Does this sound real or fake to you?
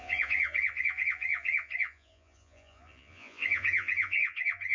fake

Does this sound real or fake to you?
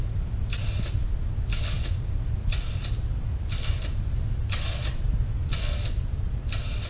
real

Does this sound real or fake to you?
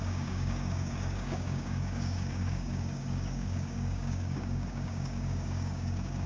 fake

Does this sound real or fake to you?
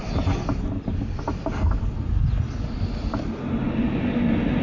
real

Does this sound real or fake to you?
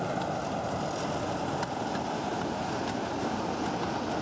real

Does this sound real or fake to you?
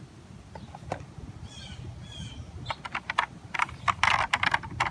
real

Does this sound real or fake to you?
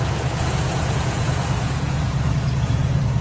fake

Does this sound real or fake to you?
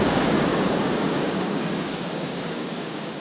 fake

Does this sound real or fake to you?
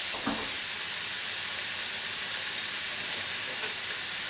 real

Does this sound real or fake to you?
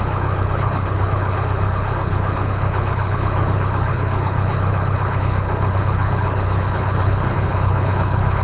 fake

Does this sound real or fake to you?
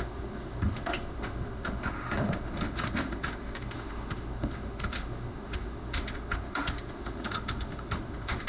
fake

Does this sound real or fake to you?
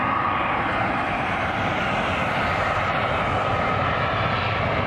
real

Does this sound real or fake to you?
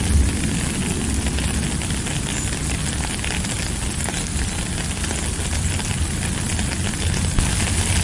real